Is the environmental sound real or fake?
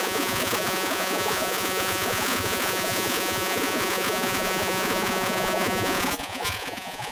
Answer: fake